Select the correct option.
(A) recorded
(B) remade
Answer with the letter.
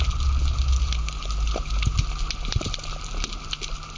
A